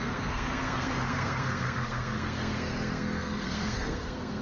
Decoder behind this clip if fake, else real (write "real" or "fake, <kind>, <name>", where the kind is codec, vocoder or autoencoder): fake, codec, SNAC